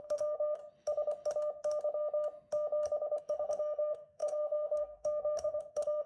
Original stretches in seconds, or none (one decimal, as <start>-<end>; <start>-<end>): 0.6-3.2